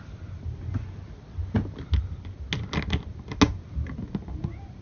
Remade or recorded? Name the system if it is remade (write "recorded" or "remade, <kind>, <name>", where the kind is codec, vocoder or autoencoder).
recorded